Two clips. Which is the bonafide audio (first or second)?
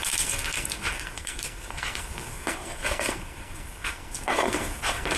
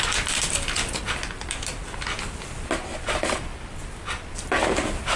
second